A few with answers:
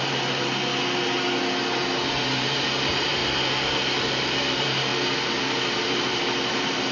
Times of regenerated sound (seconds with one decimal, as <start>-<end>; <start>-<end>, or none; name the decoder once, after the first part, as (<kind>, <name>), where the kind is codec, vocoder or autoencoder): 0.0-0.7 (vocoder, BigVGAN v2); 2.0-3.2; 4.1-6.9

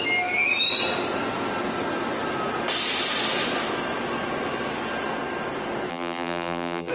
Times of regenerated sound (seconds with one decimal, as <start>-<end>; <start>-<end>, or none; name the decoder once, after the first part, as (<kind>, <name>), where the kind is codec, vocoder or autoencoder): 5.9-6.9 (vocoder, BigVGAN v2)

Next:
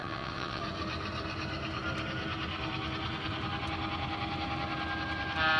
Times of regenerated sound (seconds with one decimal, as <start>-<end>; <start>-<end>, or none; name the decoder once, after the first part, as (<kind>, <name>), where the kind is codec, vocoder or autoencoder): 0.0-0.6 (vocoder, WaveNeXt)

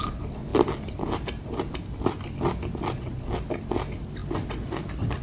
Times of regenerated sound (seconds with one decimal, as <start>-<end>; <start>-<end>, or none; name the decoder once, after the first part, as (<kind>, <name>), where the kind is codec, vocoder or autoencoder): none